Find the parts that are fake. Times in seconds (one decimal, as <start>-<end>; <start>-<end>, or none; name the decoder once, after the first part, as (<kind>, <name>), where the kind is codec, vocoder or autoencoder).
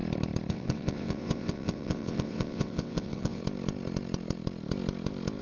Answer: 0.5-3.4 (vocoder, WaveNeXt)